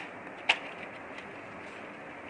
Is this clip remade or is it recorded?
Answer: recorded